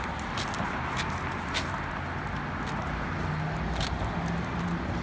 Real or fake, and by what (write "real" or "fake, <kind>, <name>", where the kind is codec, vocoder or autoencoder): real